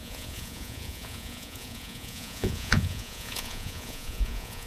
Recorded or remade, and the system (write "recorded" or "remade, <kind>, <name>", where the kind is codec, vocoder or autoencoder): remade, vocoder, Vocos